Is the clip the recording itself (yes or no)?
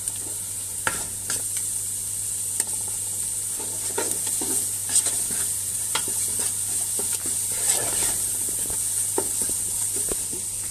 yes